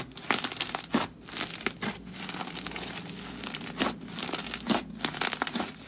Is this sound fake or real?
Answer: real